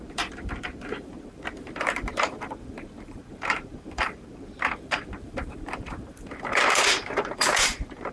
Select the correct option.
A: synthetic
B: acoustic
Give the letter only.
A